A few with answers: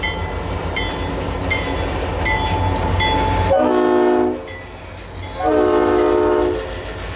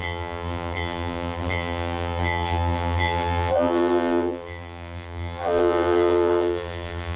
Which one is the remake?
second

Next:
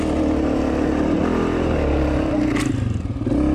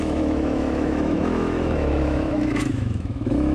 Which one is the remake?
second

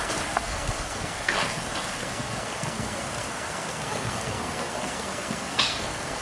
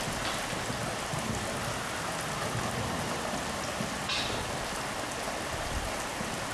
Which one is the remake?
first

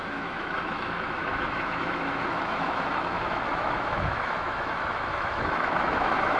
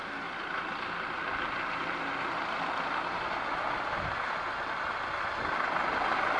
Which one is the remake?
first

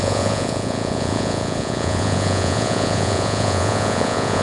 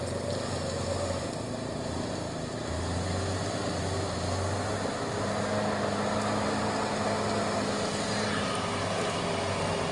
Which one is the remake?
first